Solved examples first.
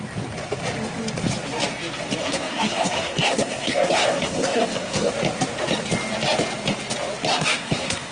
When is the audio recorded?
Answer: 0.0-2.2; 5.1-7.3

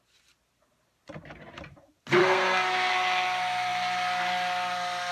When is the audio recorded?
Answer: 0.0-2.2; 2.9-5.1

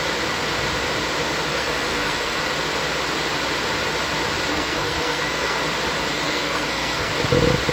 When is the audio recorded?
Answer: 0.0-1.5; 2.4-4.5; 5.6-6.1; 7.1-7.7

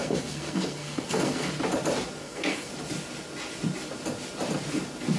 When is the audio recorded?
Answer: 1.5-2.2; 2.7-5.2

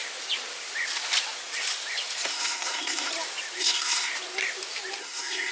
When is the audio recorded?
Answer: 0.0-2.3; 3.1-3.6; 4.1-5.0